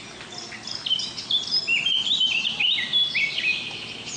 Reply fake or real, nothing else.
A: real